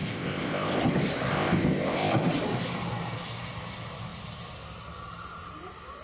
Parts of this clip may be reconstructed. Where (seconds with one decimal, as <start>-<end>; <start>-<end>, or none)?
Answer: 0.0-0.8; 1.3-2.1